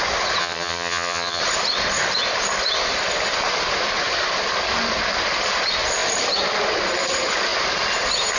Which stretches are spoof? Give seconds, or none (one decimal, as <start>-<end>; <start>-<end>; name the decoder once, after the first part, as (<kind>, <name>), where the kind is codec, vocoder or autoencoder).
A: 0.4-1.4 (vocoder, HiFi-GAN)